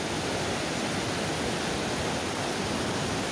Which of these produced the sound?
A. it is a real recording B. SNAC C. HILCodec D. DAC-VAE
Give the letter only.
A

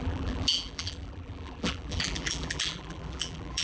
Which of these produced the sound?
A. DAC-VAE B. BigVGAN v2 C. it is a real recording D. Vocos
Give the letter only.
B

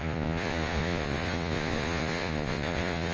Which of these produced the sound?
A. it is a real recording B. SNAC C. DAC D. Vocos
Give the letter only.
D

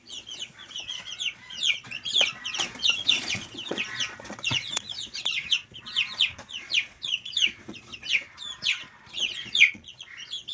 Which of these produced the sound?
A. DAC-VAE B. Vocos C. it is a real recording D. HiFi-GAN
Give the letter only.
B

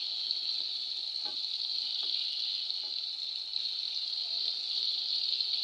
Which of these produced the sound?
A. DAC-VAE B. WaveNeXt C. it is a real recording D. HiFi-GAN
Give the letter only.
C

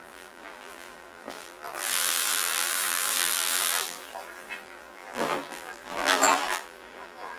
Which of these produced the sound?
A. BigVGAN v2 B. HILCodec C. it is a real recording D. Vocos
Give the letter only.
A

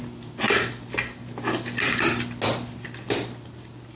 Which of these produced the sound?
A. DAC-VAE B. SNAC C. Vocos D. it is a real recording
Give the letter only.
D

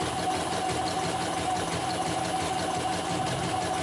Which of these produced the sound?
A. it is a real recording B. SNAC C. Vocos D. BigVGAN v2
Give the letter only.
A